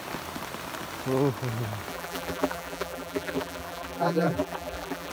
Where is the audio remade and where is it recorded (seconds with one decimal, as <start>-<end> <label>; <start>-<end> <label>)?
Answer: 0.0-1.9 recorded; 1.9-5.1 remade